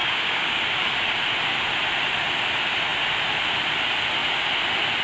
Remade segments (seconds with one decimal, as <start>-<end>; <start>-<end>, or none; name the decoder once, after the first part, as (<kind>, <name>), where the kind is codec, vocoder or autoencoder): 0.0-0.6 (codec, DAC)